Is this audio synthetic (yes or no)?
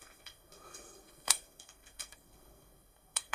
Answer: yes